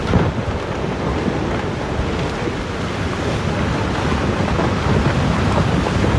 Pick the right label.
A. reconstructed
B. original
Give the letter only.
B